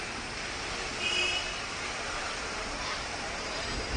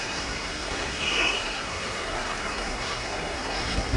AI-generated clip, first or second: second